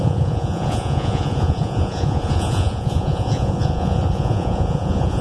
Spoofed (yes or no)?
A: yes